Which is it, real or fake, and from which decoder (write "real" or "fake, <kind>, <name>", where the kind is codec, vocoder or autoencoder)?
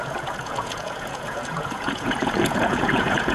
fake, vocoder, Vocos